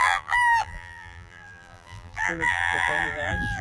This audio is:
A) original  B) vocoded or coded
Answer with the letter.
B